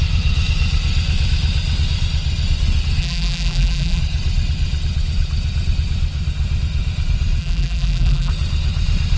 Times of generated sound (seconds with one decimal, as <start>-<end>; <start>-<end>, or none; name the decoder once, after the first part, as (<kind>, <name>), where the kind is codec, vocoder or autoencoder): 3.0-4.0 (vocoder, BigVGAN v2); 7.4-8.3